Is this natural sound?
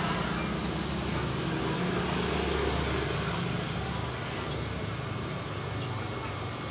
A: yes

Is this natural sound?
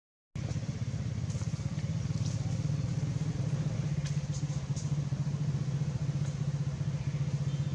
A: yes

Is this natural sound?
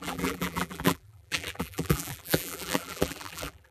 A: no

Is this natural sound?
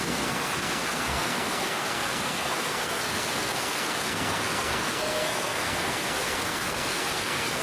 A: no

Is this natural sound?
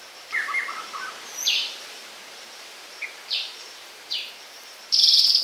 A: no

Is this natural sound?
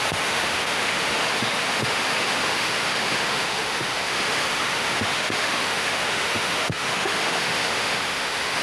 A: no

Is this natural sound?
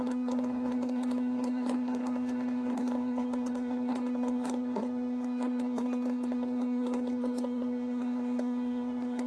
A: no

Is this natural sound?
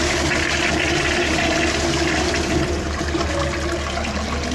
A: yes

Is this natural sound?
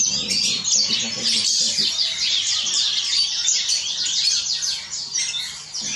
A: yes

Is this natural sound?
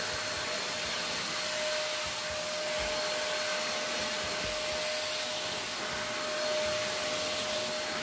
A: yes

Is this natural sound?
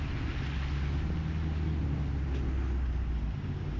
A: yes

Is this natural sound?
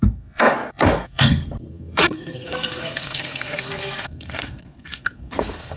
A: no